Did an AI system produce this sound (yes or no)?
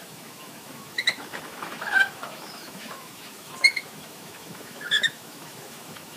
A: yes